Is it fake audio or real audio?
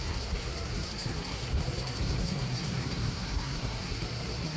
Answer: fake